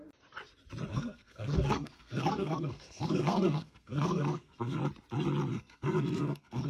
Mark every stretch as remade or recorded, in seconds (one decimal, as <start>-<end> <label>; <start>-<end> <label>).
0.0-0.9 recorded; 0.9-4.8 remade; 4.8-5.5 recorded; 5.5-6.7 remade